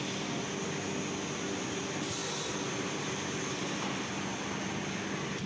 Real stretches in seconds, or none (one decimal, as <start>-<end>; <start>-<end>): 0.0-2.2; 4.0-5.5